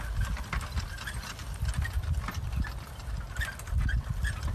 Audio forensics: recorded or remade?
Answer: recorded